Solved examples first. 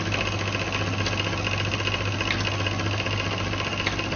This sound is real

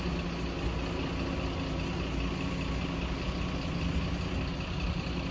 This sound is real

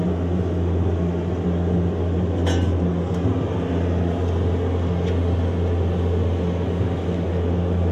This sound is real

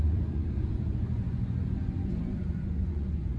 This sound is fake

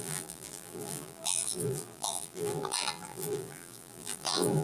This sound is fake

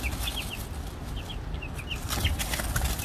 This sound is real